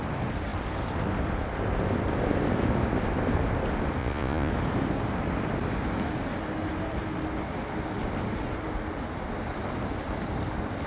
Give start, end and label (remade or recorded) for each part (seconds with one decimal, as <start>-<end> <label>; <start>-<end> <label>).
0.0-4.0 recorded; 4.0-4.5 remade; 4.5-10.9 recorded